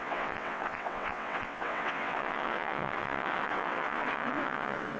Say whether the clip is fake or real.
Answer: fake